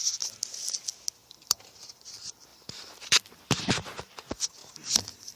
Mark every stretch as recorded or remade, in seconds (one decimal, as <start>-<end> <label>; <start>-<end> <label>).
0.0-1.2 recorded; 1.2-1.9 remade; 1.9-2.5 recorded; 2.5-3.6 remade; 3.6-4.6 recorded; 4.6-5.4 remade